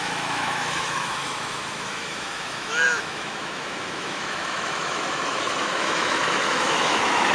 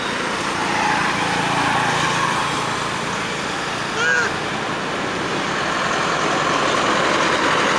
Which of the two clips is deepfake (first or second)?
first